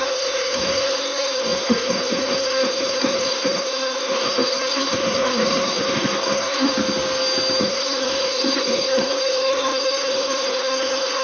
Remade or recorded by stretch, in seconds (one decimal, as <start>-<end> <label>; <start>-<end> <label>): 0.0-6.7 remade; 6.7-7.6 recorded; 7.6-11.2 remade